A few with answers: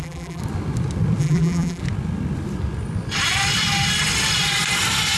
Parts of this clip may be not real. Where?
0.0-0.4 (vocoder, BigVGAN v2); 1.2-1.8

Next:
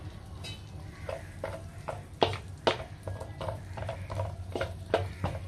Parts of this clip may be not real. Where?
3.2-5.1 (vocoder, BigVGAN v2)

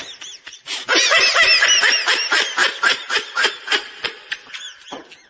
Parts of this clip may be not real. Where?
2.6-4.0 (vocoder, BigVGAN v2)

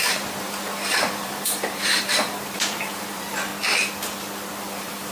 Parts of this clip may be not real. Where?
0.0-3.5 (vocoder, BigVGAN v2); 4.6-5.1